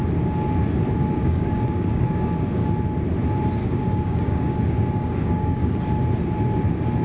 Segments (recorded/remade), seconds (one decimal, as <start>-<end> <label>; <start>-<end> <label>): 0.0-1.0 recorded; 1.0-2.7 remade; 2.7-3.6 recorded; 3.6-5.8 remade; 5.8-7.0 recorded